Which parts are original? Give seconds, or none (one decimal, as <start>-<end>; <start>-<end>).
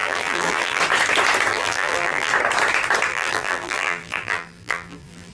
0.8-1.5; 2.3-3.1